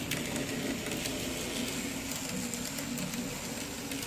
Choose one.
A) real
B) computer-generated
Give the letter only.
A